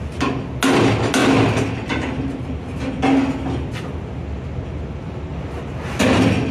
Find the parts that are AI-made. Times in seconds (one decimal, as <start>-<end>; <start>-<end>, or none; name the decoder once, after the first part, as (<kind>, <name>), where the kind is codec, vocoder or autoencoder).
none